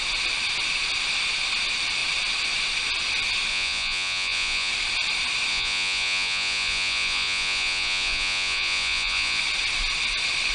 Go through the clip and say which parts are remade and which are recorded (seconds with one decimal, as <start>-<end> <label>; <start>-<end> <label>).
0.0-3.5 recorded; 3.5-4.7 remade; 4.7-5.5 recorded; 5.5-9.4 remade; 9.4-10.5 recorded